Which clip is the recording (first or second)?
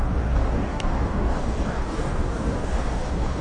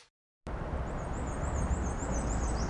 second